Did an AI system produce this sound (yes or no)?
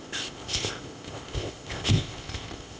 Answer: yes